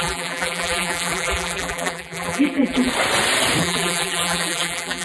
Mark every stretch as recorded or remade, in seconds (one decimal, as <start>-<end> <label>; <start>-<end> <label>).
0.0-2.9 remade; 2.9-3.6 recorded; 3.6-5.0 remade